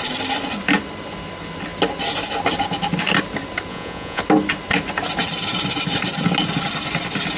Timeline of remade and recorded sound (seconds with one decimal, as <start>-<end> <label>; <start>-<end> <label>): 0.0-3.7 recorded; 3.7-4.2 remade; 4.2-7.4 recorded